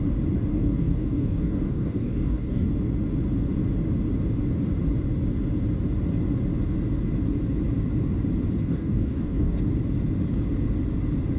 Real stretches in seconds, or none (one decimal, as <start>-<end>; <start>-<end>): 0.0-0.5; 2.7-8.6; 9.7-11.4